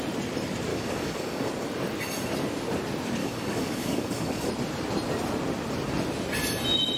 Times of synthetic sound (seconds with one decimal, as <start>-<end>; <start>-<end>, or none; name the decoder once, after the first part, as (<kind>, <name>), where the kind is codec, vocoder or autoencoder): 0.7-1.5 (codec, DAC); 3.2-4.5